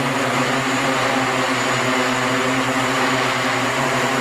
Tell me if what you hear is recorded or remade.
recorded